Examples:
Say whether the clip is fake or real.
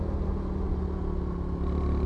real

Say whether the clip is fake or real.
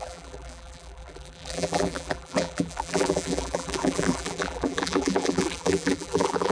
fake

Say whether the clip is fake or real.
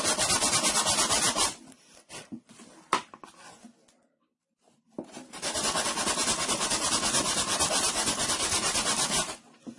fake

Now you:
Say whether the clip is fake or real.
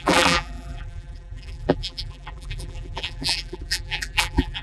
fake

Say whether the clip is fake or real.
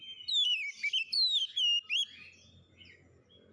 real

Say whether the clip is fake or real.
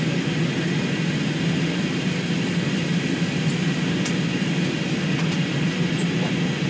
real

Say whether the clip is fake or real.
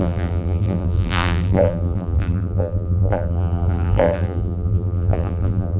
fake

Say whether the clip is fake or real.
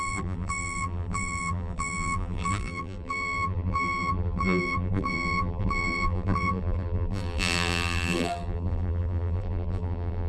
fake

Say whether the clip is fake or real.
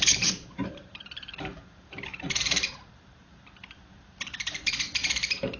fake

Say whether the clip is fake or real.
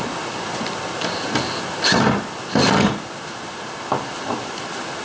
real